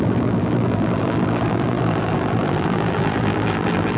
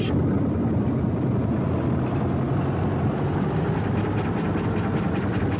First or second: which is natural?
second